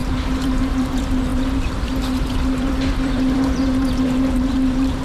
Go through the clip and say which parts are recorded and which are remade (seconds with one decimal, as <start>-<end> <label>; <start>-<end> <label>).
0.0-5.0 remade